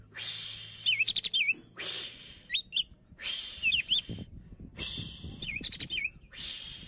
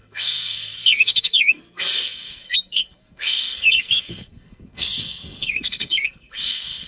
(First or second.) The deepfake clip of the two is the second